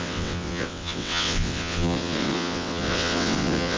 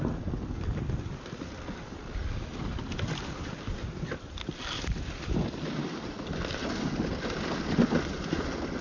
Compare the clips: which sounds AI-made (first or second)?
first